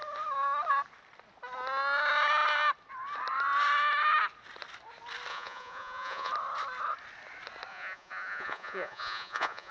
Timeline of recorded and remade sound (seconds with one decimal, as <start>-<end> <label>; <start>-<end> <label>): 0.0-5.3 recorded; 5.3-6.3 remade; 6.3-7.7 recorded; 7.7-9.7 remade

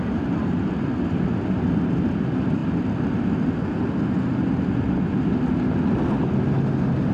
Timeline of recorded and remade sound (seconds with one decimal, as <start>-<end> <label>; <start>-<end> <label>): 0.0-7.1 recorded

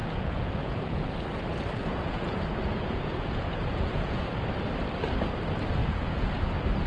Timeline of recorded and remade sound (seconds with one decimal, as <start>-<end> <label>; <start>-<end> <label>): 0.0-1.1 remade; 1.1-1.7 recorded; 1.7-4.2 remade; 4.2-5.8 recorded; 5.8-6.4 remade; 6.4-6.9 recorded

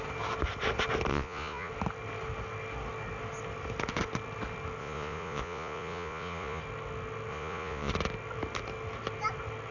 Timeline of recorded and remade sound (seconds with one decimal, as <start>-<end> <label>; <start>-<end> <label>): 0.0-1.1 recorded; 1.1-1.7 remade; 1.7-4.8 recorded; 4.8-6.6 remade; 6.6-7.3 recorded; 7.3-7.9 remade; 7.9-9.7 recorded

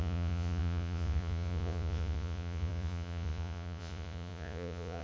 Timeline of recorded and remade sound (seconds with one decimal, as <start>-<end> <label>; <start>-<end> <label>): 0.0-5.0 remade

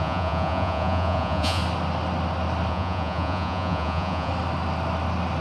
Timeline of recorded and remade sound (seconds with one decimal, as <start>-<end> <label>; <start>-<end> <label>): 0.0-1.6 remade; 1.6-2.7 recorded; 2.7-4.3 remade; 4.3-5.4 recorded

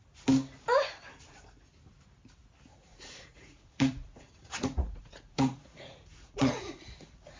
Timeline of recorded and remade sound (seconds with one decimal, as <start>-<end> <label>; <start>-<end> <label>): 0.0-2.7 recorded; 2.7-7.4 remade